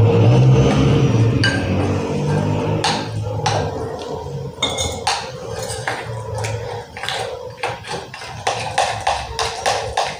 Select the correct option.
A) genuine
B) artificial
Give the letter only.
A